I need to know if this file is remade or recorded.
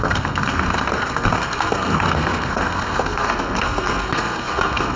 remade